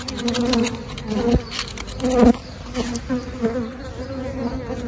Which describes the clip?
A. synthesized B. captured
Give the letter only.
B